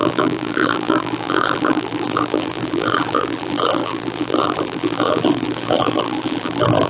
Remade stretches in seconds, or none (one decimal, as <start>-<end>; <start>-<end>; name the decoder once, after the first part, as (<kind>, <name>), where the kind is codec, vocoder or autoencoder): 0.0-6.9 (vocoder, BigVGAN v2)

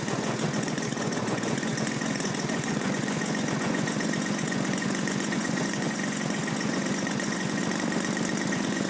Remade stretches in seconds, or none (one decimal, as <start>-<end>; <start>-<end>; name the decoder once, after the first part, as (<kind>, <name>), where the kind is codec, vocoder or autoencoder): 0.0-7.6 (vocoder, Vocos); 8.5-8.9

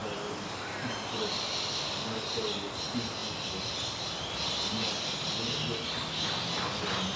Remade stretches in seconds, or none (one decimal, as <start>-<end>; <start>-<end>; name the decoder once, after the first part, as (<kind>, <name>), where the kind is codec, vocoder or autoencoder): 0.0-2.4 (vocoder, BigVGAN v2)

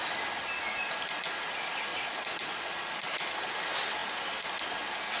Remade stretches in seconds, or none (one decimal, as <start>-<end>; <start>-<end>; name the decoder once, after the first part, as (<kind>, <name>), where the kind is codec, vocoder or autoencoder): 1.9-2.9 (vocoder, Vocos)

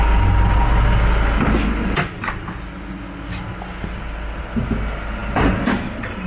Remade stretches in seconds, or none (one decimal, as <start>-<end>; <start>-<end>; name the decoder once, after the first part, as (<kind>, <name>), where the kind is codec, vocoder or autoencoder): none

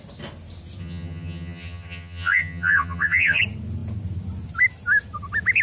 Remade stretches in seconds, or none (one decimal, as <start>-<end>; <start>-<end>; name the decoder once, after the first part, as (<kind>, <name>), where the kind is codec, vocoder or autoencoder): 0.8-3.4 (vocoder, HiFi-GAN)

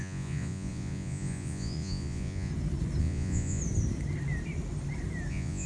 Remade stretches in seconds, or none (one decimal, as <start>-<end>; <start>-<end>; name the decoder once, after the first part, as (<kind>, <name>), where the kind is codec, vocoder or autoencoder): 0.0-2.5 (vocoder, Vocos); 3.0-3.6; 5.3-5.7

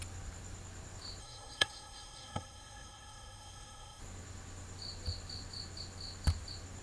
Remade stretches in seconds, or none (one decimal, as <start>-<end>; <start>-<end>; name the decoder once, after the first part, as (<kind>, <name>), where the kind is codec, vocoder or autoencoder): 1.2-4.0 (codec, SNAC)